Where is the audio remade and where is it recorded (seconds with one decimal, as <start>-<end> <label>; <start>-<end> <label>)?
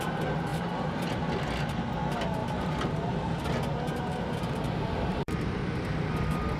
0.0-0.5 recorded; 0.5-1.1 remade; 1.1-2.4 recorded; 2.4-3.6 remade; 3.6-5.1 recorded; 5.1-5.6 remade; 5.6-6.6 recorded